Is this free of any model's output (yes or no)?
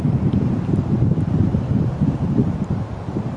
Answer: no